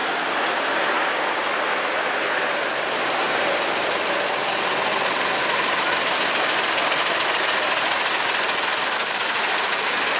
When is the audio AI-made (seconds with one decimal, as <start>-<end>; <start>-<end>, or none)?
none